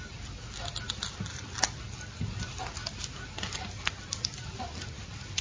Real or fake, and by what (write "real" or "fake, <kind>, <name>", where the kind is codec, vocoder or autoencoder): real